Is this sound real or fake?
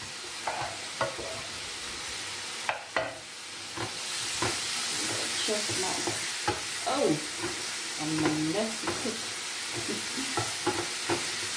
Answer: real